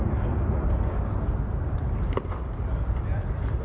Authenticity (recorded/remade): recorded